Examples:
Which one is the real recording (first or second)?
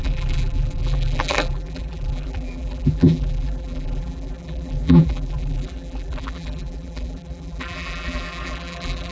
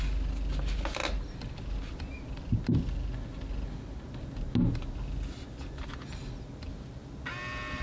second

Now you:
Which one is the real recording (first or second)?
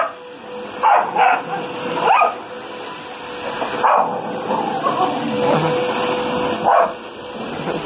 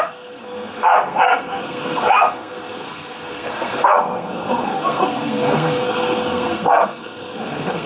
first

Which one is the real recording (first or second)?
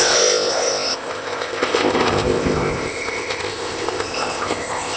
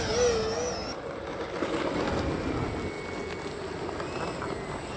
second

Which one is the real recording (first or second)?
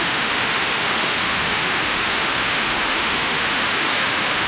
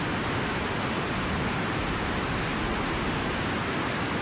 second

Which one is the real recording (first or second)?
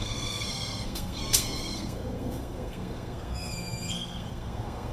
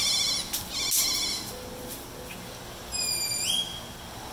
second